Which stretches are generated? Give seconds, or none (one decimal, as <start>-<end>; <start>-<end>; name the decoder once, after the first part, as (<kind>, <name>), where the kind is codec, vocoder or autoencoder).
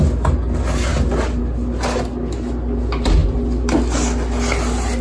none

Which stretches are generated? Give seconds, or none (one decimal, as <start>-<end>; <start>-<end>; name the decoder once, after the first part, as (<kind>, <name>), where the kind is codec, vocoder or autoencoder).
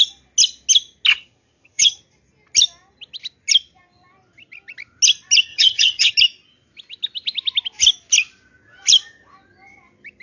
1.1-2.0 (vocoder, HiFi-GAN); 5.5-6.1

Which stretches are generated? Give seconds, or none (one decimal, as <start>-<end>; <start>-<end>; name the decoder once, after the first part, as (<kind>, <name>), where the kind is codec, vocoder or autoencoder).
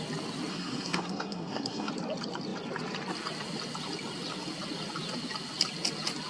0.5-1.9 (codec, SNAC)